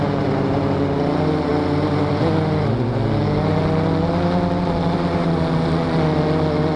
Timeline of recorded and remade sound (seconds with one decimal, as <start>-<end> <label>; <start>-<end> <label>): 0.0-6.8 recorded